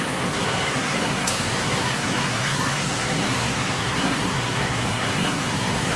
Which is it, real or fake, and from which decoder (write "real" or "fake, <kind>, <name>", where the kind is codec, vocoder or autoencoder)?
fake, codec, SNAC